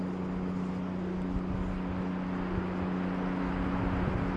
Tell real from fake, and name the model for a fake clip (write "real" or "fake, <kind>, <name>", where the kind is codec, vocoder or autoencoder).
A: real